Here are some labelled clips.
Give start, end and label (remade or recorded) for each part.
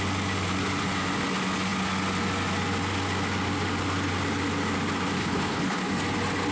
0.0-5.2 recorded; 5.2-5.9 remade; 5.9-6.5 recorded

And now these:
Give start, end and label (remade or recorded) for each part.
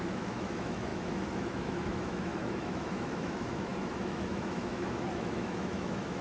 0.0-6.2 remade